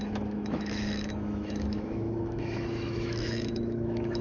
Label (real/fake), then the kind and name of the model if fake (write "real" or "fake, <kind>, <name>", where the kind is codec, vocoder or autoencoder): fake, autoencoder, DAC-VAE